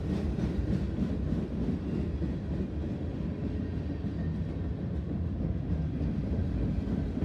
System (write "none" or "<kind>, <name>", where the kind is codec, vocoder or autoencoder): none